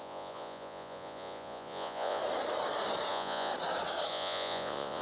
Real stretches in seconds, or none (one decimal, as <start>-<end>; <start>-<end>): 2.2-3.1; 3.5-4.1